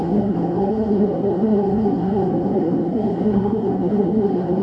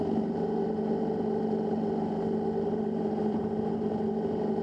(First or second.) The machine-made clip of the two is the first